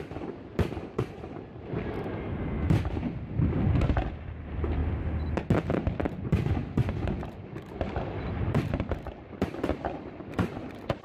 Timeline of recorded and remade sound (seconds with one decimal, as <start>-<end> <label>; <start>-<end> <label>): 0.0-4.8 remade; 4.8-5.7 recorded; 5.7-11.0 remade